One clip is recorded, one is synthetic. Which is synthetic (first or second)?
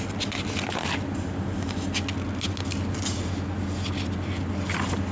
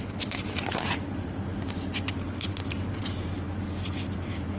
second